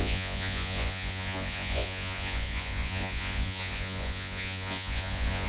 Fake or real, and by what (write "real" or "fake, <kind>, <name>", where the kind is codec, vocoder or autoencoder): fake, vocoder, Vocos